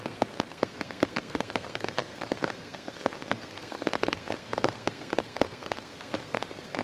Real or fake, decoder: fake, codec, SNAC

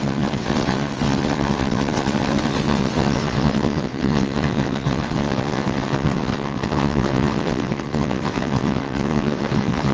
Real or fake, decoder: fake, vocoder, WaveNeXt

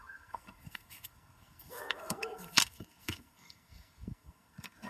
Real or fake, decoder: fake, codec, SNAC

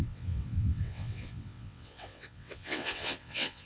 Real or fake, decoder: fake, vocoder, WaveNeXt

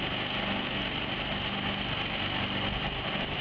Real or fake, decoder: real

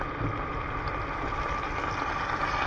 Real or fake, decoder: real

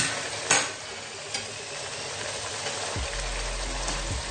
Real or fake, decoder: real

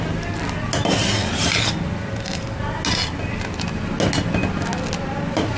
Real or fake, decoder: real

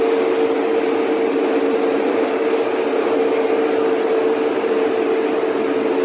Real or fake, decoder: real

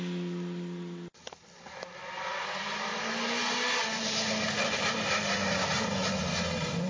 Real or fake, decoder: real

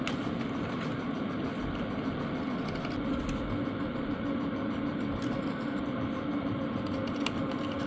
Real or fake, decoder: real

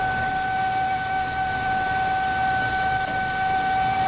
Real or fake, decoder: real